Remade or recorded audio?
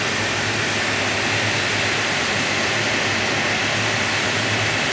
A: recorded